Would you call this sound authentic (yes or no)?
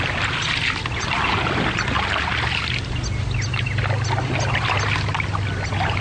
yes